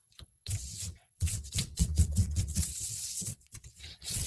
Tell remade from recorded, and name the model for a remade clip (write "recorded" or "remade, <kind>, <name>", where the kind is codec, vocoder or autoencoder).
remade, vocoder, WaveNeXt